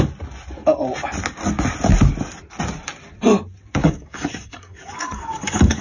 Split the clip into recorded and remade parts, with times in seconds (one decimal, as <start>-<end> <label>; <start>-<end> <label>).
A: 0.0-3.8 recorded; 3.8-5.8 remade